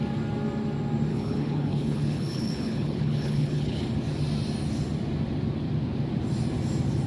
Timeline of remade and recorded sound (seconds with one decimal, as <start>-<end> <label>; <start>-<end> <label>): 0.0-1.1 recorded; 1.1-3.8 remade; 3.8-7.1 recorded